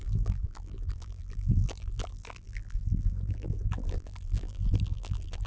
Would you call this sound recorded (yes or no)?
no